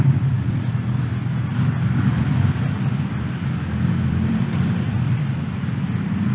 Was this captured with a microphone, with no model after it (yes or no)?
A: no